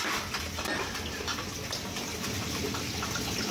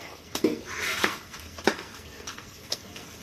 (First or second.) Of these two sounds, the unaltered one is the first